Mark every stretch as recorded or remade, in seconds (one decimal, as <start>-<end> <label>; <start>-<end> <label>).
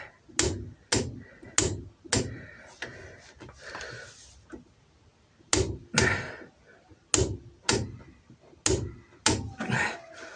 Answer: 0.0-10.4 recorded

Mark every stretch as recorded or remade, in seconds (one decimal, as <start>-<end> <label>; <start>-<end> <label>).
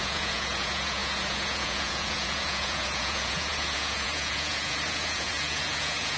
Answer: 0.0-6.2 remade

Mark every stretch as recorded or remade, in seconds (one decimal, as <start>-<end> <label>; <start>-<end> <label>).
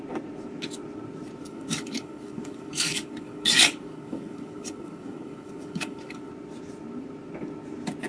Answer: 0.0-1.4 recorded; 1.4-6.3 remade; 6.3-8.1 recorded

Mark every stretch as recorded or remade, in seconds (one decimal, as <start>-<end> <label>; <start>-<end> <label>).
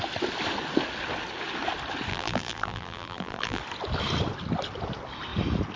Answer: 0.0-2.1 recorded; 2.1-3.6 remade; 3.6-5.8 recorded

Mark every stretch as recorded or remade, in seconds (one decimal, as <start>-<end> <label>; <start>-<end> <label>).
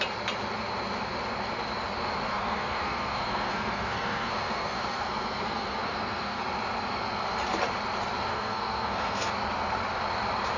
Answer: 0.0-2.3 recorded; 2.3-6.4 remade; 6.4-8.3 recorded; 8.3-9.3 remade; 9.3-10.6 recorded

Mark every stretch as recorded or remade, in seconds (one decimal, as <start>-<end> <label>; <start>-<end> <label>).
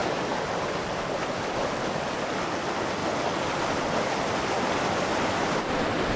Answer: 0.0-1.4 remade; 1.4-5.1 recorded; 5.1-5.7 remade; 5.7-6.2 recorded